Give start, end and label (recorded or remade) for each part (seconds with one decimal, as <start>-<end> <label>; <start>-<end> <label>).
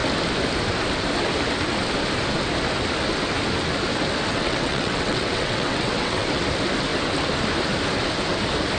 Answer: 0.0-4.3 recorded; 4.3-6.3 remade; 6.3-8.8 recorded